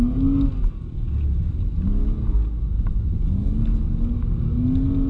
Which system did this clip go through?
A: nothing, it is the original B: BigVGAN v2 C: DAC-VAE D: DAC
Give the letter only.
A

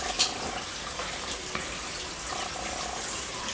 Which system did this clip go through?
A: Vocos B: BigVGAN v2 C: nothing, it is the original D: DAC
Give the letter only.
C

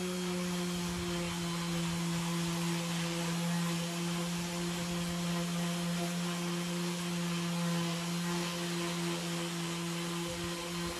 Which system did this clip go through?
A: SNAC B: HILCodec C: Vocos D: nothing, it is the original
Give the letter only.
D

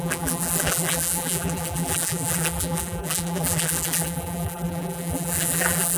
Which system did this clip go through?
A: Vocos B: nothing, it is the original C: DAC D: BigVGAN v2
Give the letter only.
D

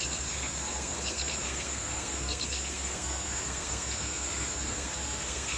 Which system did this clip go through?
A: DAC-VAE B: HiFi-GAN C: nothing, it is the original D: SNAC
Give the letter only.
D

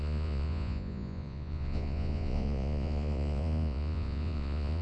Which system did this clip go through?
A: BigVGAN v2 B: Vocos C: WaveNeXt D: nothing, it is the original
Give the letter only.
B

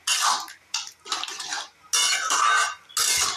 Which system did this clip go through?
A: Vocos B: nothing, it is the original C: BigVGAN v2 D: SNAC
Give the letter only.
B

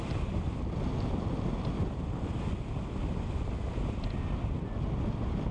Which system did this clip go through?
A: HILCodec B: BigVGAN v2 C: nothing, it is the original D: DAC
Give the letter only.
C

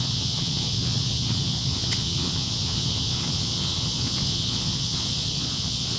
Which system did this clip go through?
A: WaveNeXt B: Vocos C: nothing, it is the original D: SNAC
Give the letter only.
B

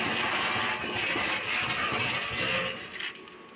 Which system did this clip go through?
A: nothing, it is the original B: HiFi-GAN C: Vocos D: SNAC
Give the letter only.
A